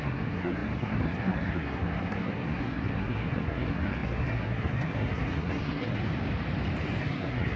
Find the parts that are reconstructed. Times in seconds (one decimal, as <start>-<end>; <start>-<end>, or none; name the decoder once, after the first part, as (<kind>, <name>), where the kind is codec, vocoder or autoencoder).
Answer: 0.0-6.0 (codec, SNAC); 7.0-7.6